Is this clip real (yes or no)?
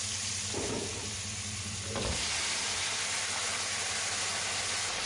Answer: yes